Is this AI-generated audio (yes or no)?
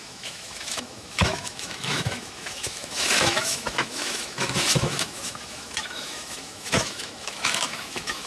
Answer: yes